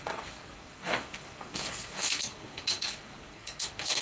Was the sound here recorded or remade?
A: remade